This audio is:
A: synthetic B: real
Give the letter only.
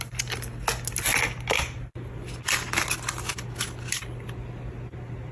B